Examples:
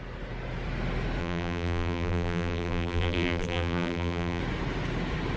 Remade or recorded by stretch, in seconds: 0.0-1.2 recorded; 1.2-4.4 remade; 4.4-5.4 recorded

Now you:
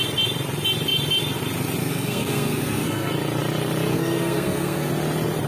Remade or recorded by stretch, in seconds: 0.0-1.8 recorded; 1.8-3.1 remade; 3.1-3.9 recorded; 3.9-4.9 remade; 4.9-5.5 recorded

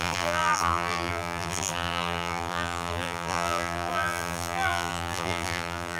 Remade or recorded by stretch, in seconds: 0.0-6.0 remade